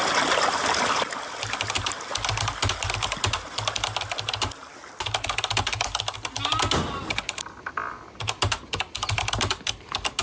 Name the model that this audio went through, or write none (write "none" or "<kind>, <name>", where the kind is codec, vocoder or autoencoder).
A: none